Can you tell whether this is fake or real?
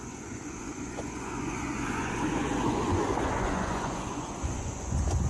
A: fake